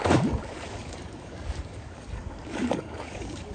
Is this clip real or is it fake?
fake